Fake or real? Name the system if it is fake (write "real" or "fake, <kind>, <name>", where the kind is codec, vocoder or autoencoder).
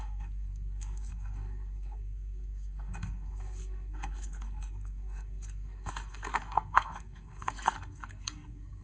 fake, codec, SNAC